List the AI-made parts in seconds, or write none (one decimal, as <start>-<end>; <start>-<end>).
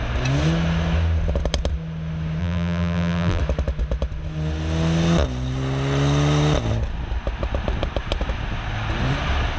2.4-3.4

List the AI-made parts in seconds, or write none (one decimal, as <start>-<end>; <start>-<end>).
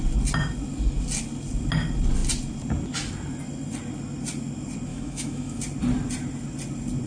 4.9-5.6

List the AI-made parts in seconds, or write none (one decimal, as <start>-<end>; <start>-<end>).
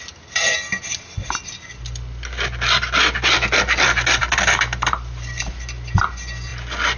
none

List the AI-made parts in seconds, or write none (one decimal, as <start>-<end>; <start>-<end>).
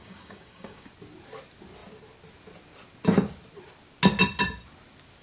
0.0-0.9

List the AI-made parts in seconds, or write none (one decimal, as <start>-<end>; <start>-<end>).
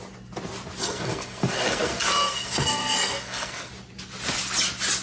0.8-3.7